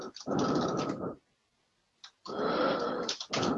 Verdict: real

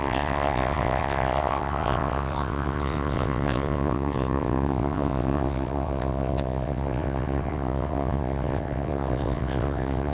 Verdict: fake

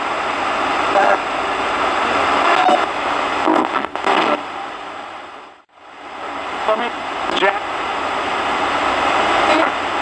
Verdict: real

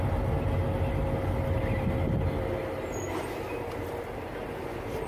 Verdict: real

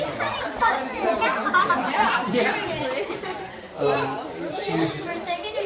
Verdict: real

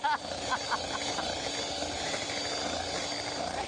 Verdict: real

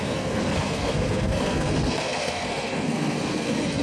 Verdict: fake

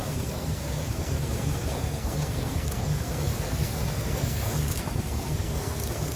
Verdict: fake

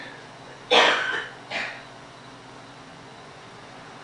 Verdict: fake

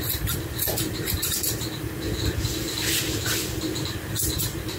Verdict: real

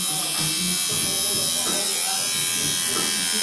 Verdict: real